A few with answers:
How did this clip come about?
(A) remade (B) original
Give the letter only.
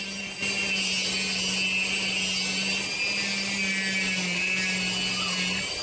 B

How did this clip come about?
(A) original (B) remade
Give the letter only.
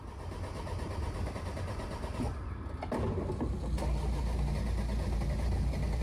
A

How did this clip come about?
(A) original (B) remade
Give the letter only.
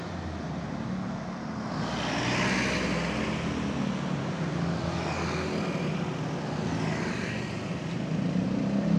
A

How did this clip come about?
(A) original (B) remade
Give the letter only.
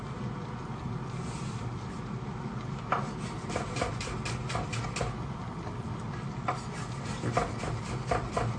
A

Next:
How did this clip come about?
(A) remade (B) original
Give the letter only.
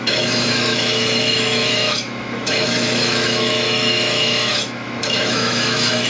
A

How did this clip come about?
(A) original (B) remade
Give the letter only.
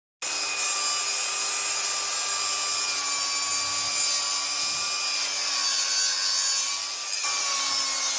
A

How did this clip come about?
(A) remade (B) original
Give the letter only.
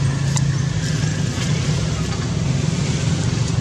B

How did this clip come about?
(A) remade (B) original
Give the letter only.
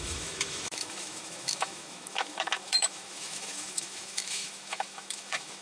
A